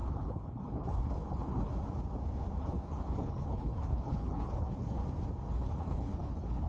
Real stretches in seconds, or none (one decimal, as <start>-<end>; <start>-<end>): 1.7-2.6; 5.0-5.5